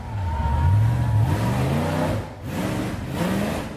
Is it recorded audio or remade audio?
recorded